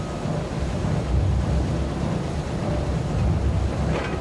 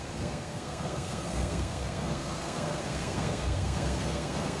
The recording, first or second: first